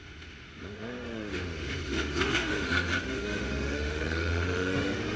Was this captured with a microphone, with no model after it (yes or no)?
no